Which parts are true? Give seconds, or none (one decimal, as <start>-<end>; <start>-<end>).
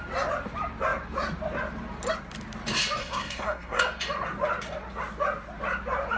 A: 0.0-3.0; 3.8-6.2